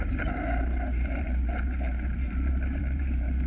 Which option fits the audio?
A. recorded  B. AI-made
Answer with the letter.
B